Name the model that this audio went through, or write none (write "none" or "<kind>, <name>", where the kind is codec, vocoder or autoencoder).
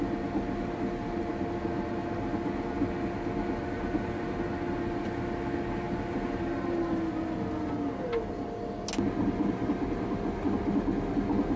none